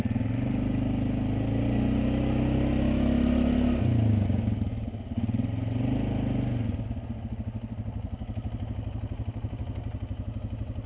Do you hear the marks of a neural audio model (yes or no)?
no